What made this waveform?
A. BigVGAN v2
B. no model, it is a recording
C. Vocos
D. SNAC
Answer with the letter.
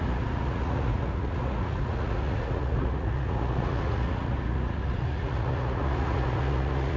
C